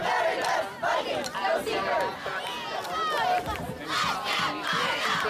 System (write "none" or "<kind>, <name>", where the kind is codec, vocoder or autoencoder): none